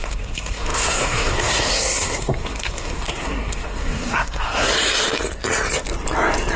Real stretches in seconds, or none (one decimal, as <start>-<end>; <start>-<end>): 4.7-6.6